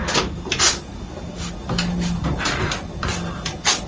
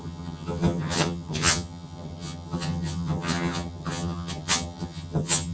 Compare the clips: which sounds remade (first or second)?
second